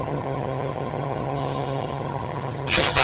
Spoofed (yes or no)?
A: yes